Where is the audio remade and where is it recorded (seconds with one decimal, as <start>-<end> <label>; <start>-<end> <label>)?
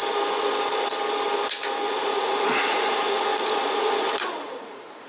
0.0-1.9 recorded; 1.9-5.1 remade